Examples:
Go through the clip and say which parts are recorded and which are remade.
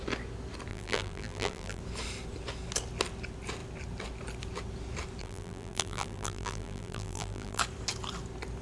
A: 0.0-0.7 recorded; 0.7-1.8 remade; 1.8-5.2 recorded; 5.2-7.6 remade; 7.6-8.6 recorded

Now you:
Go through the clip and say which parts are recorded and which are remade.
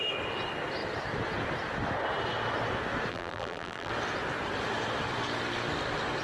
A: 0.0-3.1 recorded; 3.1-3.9 remade; 3.9-6.2 recorded